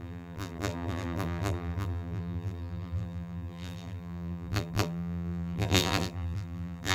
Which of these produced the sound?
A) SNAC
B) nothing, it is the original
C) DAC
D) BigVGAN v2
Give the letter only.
D